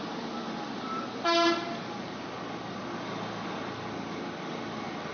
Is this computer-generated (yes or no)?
no